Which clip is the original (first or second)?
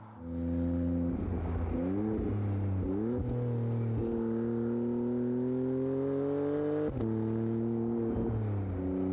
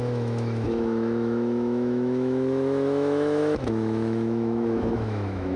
first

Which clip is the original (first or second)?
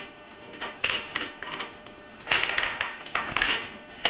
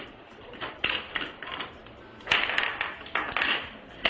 second